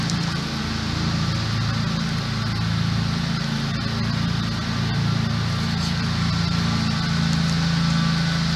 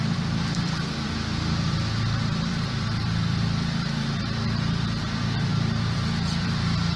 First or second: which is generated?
second